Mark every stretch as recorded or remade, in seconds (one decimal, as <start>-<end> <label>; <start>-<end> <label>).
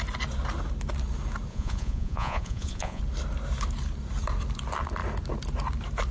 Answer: 0.0-1.5 recorded; 1.5-3.0 remade; 3.0-6.1 recorded